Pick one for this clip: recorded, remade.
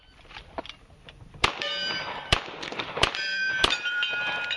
remade